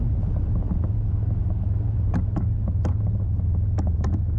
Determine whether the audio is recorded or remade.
recorded